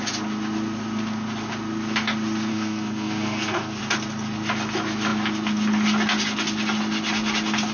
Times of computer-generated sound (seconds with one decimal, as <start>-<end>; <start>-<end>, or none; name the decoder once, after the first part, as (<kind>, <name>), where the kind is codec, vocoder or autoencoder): 2.5-3.8 (codec, SNAC)